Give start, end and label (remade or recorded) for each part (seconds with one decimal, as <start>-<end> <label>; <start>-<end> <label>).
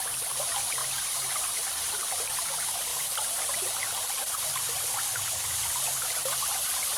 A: 0.0-2.9 recorded; 2.9-4.9 remade; 4.9-7.0 recorded